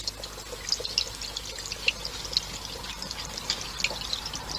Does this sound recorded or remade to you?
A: recorded